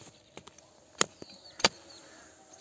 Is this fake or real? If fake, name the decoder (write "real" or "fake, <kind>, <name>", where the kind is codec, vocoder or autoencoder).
real